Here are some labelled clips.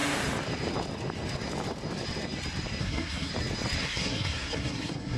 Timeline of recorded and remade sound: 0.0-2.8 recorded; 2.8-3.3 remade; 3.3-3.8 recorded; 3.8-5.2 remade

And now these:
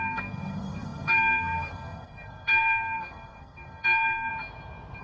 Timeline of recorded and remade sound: 0.0-4.3 remade; 4.3-5.0 recorded

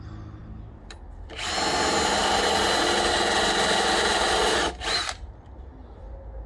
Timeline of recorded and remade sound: 0.0-6.5 recorded

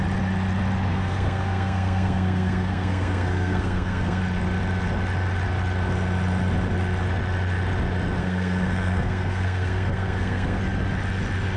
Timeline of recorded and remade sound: 0.0-0.9 recorded; 0.9-4.2 remade; 4.2-8.2 recorded; 8.2-10.6 remade; 10.6-11.6 recorded

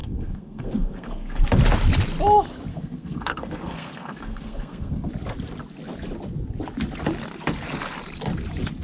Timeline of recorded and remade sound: 0.0-1.4 remade; 1.4-2.7 recorded; 2.7-5.1 remade; 5.1-8.8 recorded

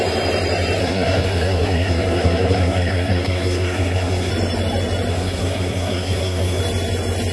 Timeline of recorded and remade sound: 0.0-0.8 recorded; 0.8-4.3 remade; 4.3-5.1 recorded; 5.1-6.6 remade; 6.6-7.3 recorded